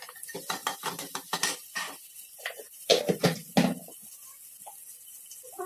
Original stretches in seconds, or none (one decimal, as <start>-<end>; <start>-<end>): 2.9-5.7

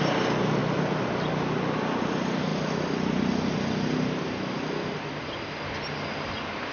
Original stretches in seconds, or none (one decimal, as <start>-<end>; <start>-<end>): 0.0-6.7

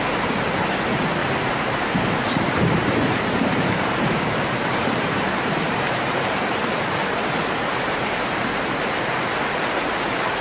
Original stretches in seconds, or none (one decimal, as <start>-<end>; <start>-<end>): 0.0-1.2; 6.4-7.0; 8.8-10.4

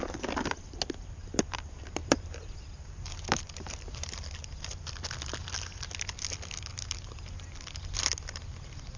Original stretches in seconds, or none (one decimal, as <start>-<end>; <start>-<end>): 0.0-2.0; 4.9-9.0

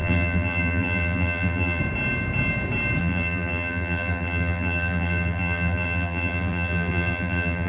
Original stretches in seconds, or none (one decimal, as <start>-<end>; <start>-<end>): 1.8-3.0

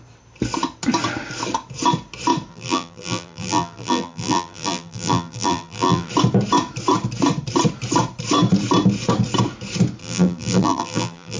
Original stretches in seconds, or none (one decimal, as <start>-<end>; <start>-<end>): 0.0-2.5; 6.1-10.0

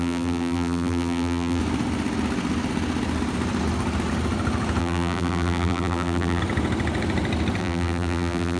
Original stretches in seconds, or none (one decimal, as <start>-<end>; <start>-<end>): 1.6-4.8; 6.4-7.6

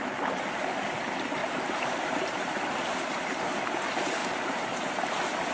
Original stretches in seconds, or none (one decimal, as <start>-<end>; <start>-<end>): 0.0-1.4; 2.6-4.2; 5.1-5.5